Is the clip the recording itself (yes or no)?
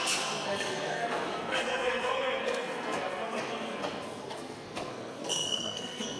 no